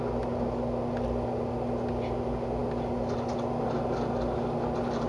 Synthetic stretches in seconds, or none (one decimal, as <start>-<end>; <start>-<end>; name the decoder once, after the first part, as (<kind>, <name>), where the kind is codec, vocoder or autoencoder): none